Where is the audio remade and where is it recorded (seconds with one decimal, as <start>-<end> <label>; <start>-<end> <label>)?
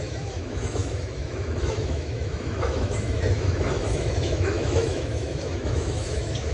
0.0-6.5 remade